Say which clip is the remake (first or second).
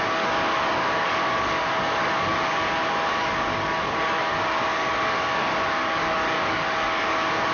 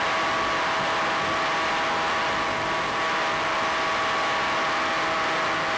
first